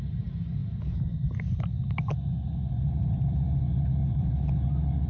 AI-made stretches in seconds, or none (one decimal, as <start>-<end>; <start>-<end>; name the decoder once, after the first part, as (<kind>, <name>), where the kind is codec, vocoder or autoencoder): 4.0-4.5 (vocoder, BigVGAN v2)